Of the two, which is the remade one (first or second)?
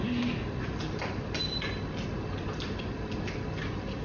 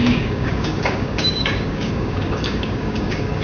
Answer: second